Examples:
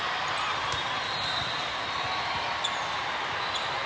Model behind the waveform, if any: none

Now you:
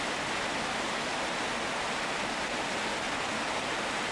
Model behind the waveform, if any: none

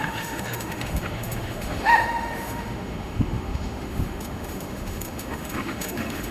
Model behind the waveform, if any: autoencoder, DAC-VAE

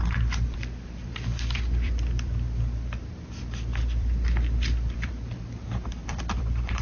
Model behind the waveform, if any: vocoder, BigVGAN v2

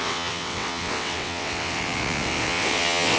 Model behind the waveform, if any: vocoder, WaveNeXt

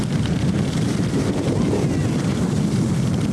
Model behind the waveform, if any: vocoder, BigVGAN v2